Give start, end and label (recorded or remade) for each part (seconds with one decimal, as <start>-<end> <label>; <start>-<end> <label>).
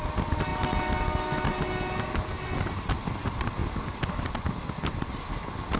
0.0-5.8 recorded